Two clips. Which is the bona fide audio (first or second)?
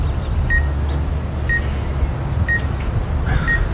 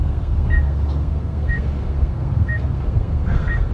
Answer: first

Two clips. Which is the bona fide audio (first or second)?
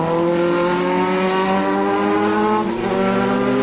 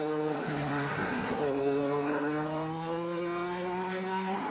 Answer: first